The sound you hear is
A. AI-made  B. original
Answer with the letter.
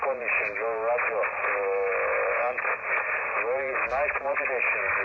B